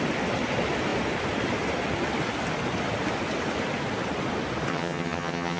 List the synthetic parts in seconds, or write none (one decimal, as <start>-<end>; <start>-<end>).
4.7-5.6